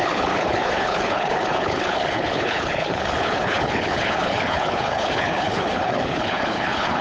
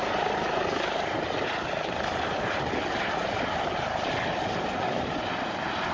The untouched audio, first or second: second